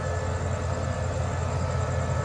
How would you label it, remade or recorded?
recorded